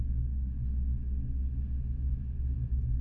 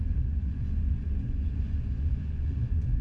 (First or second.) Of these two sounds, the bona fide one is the first